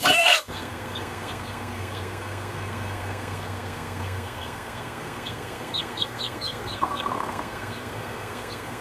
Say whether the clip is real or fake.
fake